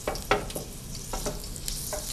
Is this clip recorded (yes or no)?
yes